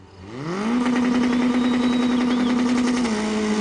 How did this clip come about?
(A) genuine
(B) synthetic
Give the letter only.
A